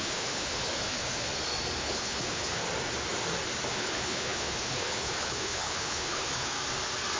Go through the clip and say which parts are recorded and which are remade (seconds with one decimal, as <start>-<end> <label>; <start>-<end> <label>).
0.0-1.3 remade; 1.3-1.8 recorded; 1.8-2.6 remade; 2.6-3.7 recorded; 3.7-6.5 remade; 6.5-7.2 recorded